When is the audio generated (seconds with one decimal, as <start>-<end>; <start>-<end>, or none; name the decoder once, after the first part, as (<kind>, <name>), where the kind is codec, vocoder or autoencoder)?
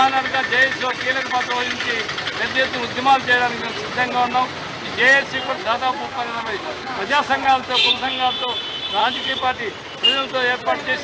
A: 5.6-8.3 (codec, DAC); 9.0-9.6